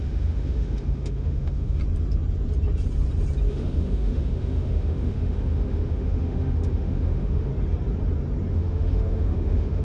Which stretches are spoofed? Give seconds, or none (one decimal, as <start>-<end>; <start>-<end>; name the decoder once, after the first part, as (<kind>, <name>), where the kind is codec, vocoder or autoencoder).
0.0-1.8 (autoencoder, DAC-VAE); 3.5-7.5; 8.5-9.8